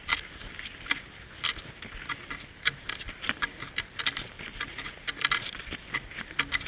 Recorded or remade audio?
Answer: recorded